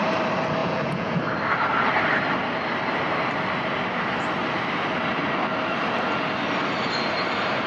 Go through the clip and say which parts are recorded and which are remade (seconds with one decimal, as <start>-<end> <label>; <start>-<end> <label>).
0.0-0.6 recorded; 0.6-1.2 remade; 1.2-7.7 recorded